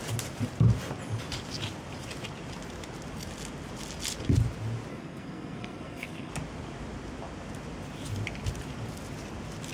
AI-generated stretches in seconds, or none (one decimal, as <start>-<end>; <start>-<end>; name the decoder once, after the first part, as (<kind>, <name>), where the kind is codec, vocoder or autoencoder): 4.9-6.3 (codec, SNAC)